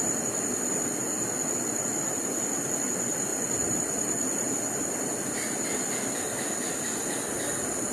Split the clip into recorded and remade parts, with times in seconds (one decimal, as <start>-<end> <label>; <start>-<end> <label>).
0.0-3.3 recorded; 3.3-4.5 remade; 4.5-7.9 recorded